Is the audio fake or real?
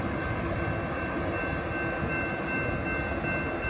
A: real